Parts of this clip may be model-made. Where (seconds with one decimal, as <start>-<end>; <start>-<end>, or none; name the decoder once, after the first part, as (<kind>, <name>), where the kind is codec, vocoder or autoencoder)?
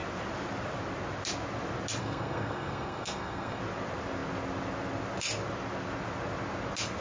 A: 2.0-3.6 (codec, SNAC)